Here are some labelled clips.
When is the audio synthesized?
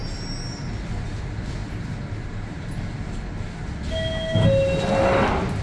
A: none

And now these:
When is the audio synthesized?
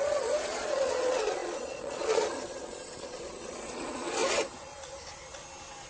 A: 0.0-4.2 (vocoder, Vocos)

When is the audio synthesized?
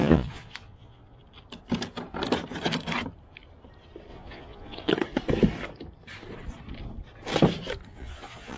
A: 0.0-1.2 (vocoder, Vocos); 4.1-4.9; 7.9-8.6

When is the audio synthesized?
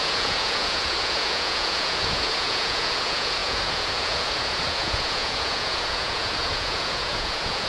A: 0.0-7.7 (vocoder, Vocos)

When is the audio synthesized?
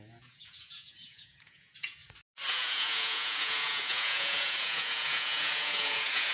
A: 0.0-2.0 (vocoder, Vocos); 2.5-6.3